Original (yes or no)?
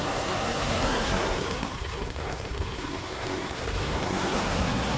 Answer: no